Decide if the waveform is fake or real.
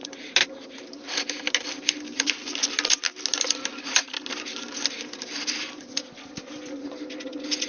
real